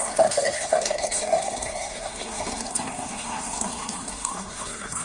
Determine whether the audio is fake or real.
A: fake